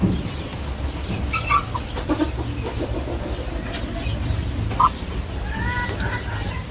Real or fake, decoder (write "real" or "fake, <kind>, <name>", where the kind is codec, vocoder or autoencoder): real